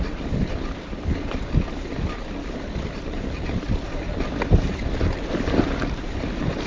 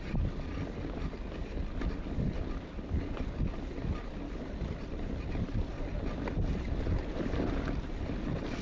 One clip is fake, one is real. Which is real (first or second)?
second